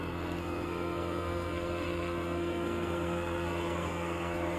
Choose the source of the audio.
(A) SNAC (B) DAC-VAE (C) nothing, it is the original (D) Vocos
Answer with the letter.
A